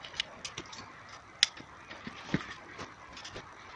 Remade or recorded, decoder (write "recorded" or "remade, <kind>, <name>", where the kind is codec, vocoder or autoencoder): recorded